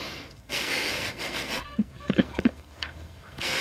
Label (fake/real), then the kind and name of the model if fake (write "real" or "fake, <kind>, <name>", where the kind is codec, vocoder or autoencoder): fake, codec, SNAC